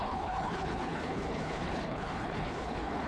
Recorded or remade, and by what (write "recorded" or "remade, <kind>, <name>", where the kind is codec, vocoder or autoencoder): remade, codec, HILCodec